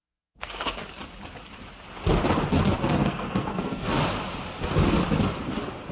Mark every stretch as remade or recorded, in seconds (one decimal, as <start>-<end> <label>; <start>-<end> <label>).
0.0-0.8 remade; 0.8-3.0 recorded; 3.0-4.0 remade; 4.0-5.9 recorded